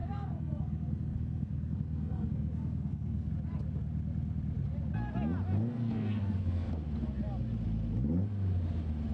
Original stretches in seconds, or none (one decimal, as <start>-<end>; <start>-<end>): 3.3-5.7; 6.7-9.1